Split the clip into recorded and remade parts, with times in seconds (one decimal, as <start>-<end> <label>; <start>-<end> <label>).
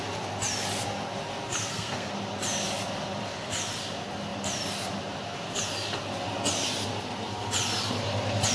0.0-1.6 recorded; 1.6-2.1 remade; 2.1-8.5 recorded